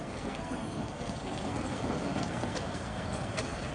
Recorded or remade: remade